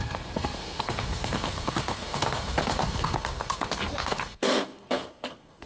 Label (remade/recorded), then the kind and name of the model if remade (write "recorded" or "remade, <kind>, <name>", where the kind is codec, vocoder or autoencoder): remade, codec, SNAC